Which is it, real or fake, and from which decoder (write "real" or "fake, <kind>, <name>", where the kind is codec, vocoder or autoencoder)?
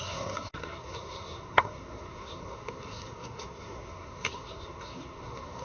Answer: fake, codec, SNAC